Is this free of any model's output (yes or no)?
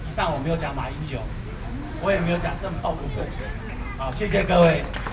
yes